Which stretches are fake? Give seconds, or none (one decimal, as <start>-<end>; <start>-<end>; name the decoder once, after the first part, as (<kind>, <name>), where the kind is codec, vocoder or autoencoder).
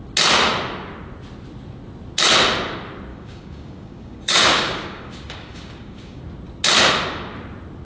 3.1-6.2 (codec, DAC)